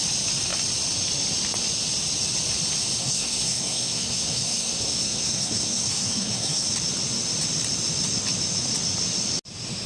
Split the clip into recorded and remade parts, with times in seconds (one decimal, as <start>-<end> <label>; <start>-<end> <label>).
0.0-3.0 recorded; 3.0-6.7 remade; 6.7-9.9 recorded